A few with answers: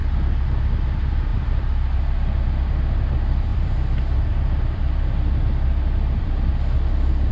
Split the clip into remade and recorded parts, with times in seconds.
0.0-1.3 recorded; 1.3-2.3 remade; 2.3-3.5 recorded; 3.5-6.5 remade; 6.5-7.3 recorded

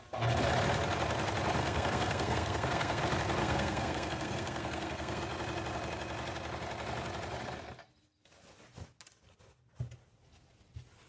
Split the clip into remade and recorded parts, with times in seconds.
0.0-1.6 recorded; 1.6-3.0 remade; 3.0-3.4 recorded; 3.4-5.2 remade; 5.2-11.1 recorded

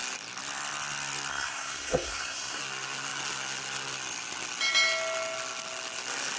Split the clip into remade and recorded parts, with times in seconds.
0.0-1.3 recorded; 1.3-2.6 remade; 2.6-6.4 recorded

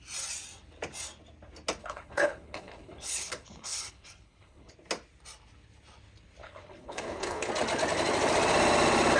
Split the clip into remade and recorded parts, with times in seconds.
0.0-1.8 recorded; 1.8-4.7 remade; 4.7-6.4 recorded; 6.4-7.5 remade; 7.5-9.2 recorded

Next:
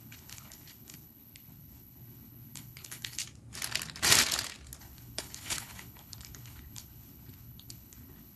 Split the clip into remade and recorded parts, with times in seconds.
0.0-3.2 remade; 3.2-4.8 recorded; 4.8-8.4 remade

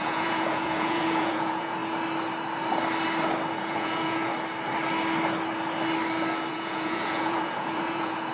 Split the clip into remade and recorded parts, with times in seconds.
0.0-1.8 remade; 1.8-3.5 recorded; 3.5-4.3 remade; 4.3-6.5 recorded; 6.5-8.3 remade

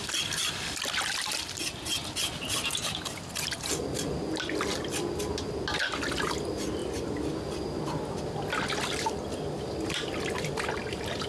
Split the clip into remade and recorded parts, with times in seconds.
0.0-11.3 recorded